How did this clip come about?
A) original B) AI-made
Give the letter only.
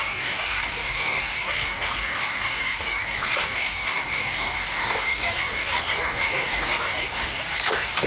B